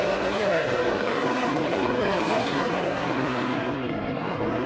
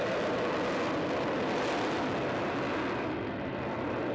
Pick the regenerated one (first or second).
first